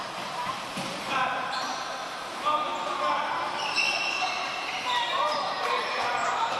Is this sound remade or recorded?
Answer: remade